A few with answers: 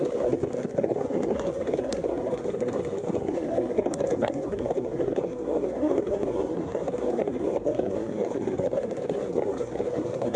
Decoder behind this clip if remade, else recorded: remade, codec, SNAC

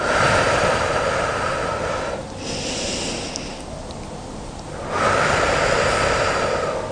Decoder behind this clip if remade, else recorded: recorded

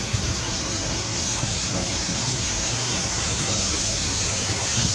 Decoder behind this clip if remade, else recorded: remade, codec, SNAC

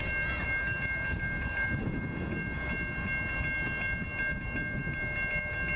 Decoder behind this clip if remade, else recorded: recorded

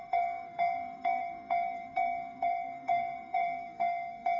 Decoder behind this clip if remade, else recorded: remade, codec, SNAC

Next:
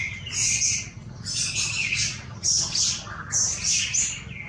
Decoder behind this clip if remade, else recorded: recorded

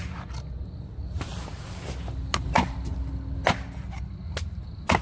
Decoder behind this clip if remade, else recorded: recorded